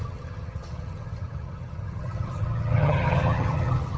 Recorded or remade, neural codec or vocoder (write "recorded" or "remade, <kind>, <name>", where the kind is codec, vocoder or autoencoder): remade, vocoder, HiFi-GAN